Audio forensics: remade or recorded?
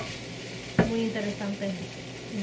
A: recorded